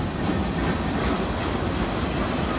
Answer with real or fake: real